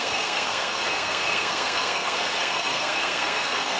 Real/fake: fake